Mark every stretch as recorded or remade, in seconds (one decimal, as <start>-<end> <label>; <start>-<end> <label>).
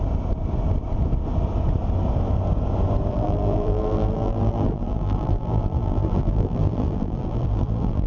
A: 0.0-3.1 recorded; 3.1-8.1 remade